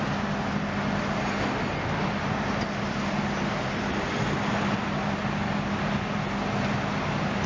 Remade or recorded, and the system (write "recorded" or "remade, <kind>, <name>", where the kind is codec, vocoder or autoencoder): recorded